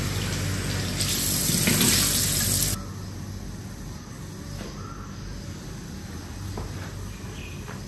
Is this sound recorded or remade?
recorded